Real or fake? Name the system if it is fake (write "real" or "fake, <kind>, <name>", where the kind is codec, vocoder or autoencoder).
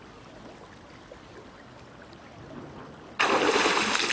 real